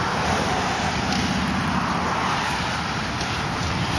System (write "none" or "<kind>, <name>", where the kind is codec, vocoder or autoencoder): none